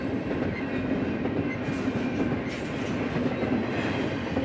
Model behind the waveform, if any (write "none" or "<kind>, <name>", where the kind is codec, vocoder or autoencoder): none